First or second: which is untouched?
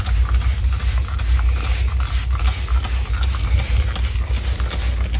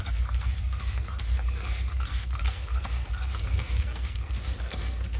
first